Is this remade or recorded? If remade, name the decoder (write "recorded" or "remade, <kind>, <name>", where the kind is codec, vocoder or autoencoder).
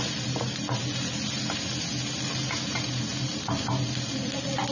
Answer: recorded